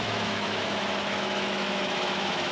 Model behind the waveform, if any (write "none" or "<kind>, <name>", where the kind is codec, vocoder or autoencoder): autoencoder, DAC-VAE